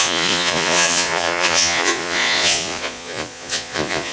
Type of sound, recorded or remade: remade